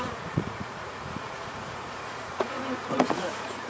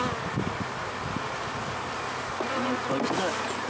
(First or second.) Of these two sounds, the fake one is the first